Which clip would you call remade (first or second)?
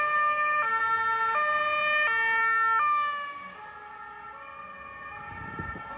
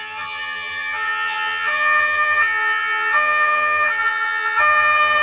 second